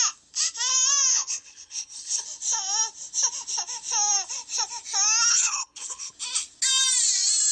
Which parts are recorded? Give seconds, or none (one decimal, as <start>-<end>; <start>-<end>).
0.0-1.1; 2.2-5.3; 6.1-7.5